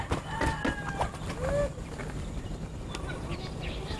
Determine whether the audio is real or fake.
real